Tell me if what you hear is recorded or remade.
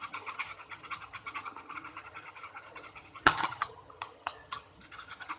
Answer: remade